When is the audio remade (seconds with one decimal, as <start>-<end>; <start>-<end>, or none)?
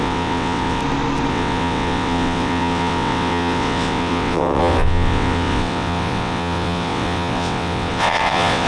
0.0-0.8; 1.3-8.7